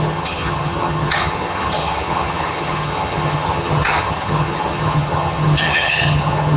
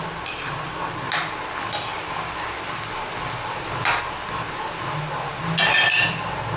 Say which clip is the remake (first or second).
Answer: first